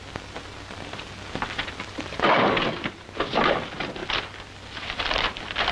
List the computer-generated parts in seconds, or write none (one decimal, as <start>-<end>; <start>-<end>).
none